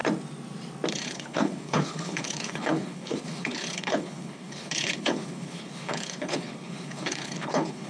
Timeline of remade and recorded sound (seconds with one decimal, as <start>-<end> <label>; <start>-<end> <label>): 0.0-0.9 recorded; 0.9-7.9 remade